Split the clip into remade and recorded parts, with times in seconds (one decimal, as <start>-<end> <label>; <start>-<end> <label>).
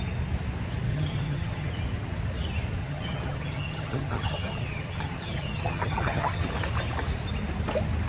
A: 0.0-0.9 recorded; 0.9-1.7 remade; 1.7-2.8 recorded; 2.8-6.5 remade; 6.5-8.1 recorded